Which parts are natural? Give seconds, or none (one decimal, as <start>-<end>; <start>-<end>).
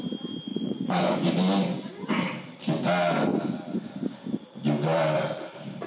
0.0-0.5; 1.3-5.9